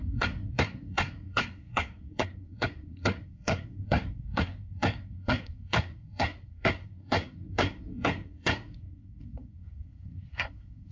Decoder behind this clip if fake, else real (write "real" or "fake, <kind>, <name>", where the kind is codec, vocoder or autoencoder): fake, codec, SNAC